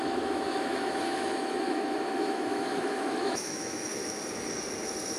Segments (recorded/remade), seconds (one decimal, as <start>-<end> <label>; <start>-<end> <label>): 0.0-4.0 remade; 4.0-5.2 recorded